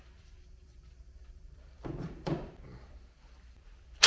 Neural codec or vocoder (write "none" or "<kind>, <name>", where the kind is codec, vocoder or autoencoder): vocoder, BigVGAN v2